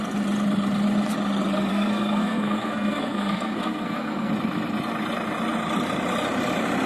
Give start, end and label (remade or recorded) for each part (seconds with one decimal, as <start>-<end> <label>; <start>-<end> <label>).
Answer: 0.0-1.7 recorded; 1.7-4.3 remade; 4.3-6.9 recorded